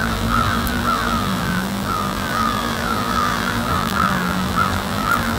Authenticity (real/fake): fake